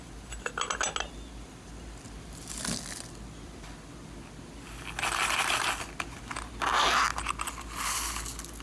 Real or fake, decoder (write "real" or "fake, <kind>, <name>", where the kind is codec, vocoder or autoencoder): real